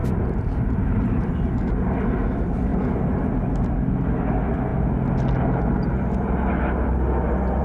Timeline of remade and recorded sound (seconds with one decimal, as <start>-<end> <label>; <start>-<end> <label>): 0.0-1.3 remade; 1.3-2.7 recorded; 2.7-3.5 remade; 3.5-7.6 recorded